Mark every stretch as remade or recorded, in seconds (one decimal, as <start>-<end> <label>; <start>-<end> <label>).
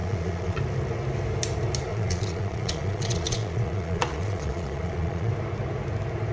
0.0-0.6 remade; 0.6-1.9 recorded; 1.9-5.3 remade; 5.3-6.3 recorded